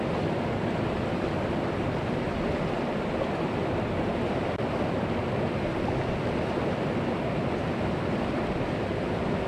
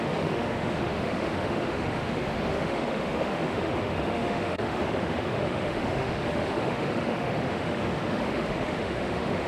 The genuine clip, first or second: first